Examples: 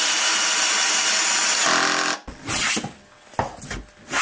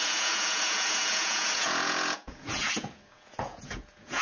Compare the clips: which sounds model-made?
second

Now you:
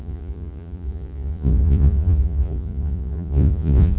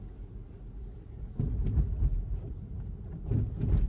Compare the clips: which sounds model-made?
first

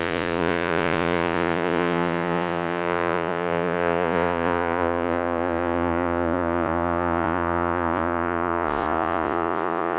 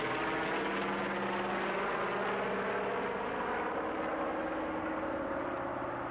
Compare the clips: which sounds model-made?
first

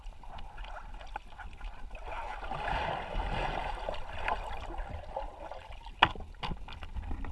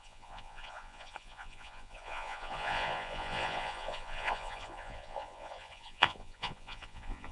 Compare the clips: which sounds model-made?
second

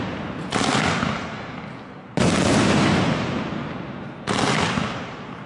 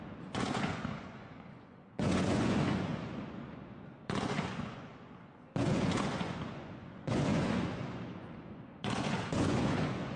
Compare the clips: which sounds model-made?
second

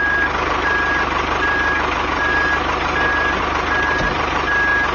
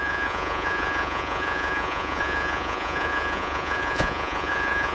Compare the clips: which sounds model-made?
second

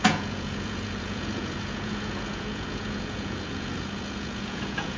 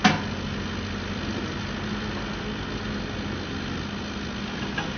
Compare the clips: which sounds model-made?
first